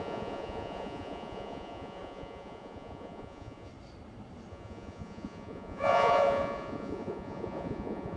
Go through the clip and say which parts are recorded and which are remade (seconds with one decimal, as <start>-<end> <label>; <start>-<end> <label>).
0.0-3.7 remade; 3.7-4.5 recorded; 4.5-8.2 remade